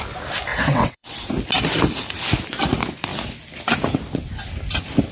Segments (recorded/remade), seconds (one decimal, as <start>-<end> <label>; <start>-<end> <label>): 0.0-0.5 recorded; 0.5-1.3 remade; 1.3-5.1 recorded